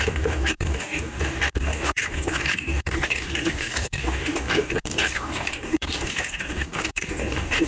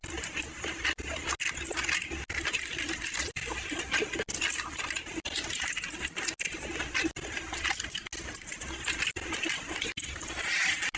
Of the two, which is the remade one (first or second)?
first